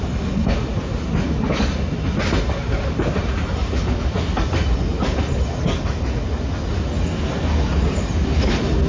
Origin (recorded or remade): recorded